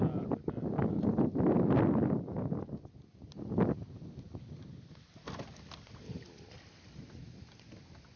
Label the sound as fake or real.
real